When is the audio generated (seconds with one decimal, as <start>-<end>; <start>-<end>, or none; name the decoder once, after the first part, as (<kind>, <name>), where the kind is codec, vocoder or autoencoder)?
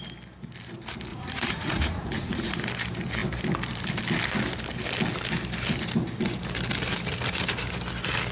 1.1-2.6 (vocoder, Vocos)